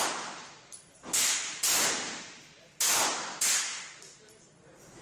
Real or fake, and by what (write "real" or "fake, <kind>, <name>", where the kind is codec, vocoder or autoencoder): real